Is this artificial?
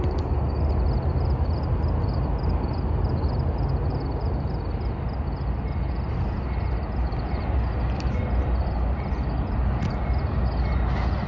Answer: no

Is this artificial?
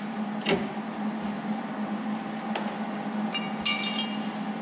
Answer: no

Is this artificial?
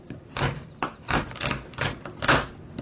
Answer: no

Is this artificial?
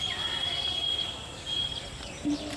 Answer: no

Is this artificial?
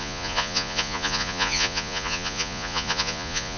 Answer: yes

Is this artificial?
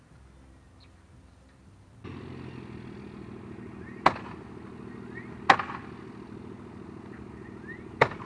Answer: no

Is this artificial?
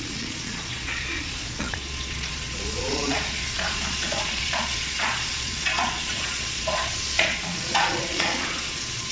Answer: yes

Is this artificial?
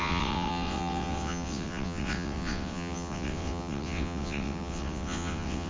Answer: yes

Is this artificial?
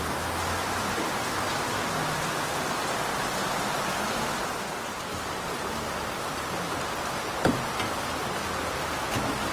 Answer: no